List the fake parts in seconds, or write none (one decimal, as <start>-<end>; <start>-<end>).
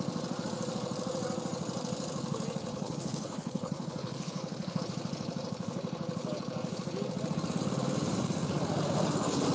2.7-4.8